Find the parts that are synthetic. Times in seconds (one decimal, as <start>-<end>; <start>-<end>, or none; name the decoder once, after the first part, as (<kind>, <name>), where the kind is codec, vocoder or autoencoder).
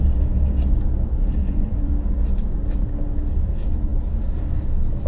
1.4-1.9 (vocoder, Vocos)